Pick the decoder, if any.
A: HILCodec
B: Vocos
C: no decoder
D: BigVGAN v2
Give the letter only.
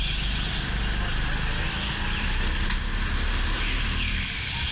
C